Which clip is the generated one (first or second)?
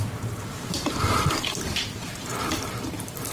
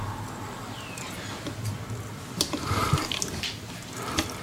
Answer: first